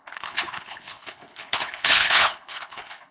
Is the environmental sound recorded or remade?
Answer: remade